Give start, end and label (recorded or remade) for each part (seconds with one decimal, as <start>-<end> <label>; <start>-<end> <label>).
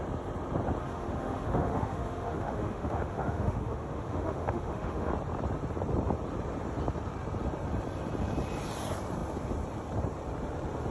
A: 0.0-0.8 recorded; 0.8-5.1 remade; 5.1-10.9 recorded